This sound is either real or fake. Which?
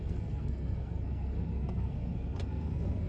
fake